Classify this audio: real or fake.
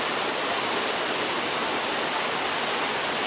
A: real